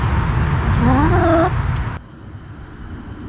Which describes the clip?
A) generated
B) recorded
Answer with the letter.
B